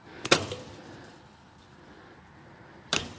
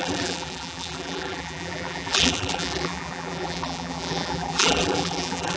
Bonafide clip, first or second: first